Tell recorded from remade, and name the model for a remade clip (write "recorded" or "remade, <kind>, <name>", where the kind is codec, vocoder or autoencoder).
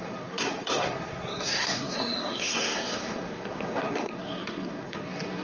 remade, codec, SNAC